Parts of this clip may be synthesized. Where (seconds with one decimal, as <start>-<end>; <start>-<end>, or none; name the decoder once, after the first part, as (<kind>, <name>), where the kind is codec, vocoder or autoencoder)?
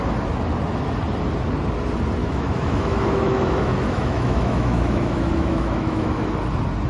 2.2-6.3 (autoencoder, DAC-VAE)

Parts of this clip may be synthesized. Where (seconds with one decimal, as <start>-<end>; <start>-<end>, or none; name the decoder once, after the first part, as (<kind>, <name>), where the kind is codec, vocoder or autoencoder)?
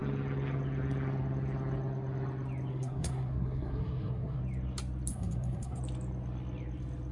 2.7-4.4 (codec, SNAC); 5.1-5.8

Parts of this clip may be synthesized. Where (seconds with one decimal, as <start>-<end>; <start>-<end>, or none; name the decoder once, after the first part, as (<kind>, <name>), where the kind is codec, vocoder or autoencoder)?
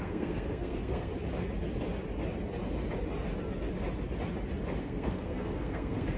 0.0-1.1 (codec, SNAC); 4.8-6.2